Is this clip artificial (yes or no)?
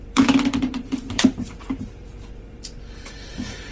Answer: yes